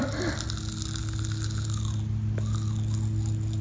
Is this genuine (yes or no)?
yes